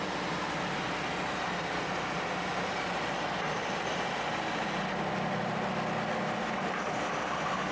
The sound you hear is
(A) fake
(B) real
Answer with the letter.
B